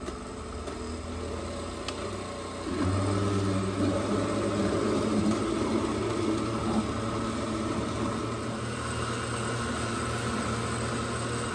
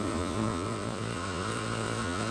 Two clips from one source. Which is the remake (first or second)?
second